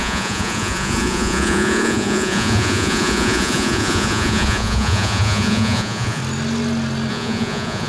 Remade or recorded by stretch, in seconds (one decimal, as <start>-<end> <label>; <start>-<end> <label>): 0.0-6.2 remade; 6.2-7.1 recorded; 7.1-7.9 remade